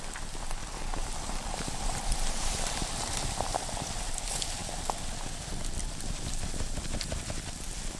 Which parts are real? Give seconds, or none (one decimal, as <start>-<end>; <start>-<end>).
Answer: 0.0-0.6; 3.6-8.0